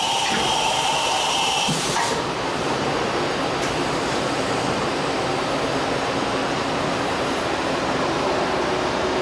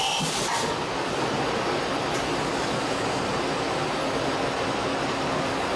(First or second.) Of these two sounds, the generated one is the first